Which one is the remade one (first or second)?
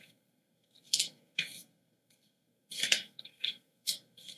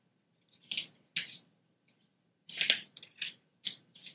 first